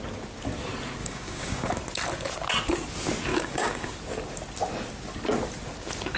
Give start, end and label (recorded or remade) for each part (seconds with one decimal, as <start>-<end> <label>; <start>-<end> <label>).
0.0-1.0 recorded; 1.0-1.7 remade; 1.7-3.3 recorded; 3.3-3.9 remade; 3.9-6.2 recorded